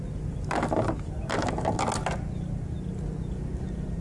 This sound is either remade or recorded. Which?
recorded